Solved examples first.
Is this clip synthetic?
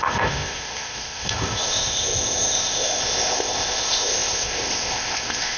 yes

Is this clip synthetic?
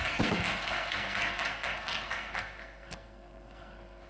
yes